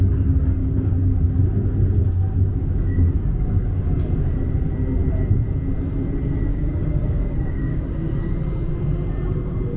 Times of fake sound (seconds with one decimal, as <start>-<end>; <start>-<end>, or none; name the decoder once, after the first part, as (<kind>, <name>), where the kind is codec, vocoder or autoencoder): 0.6-1.3 (codec, DAC); 2.0-3.9; 6.5-8.1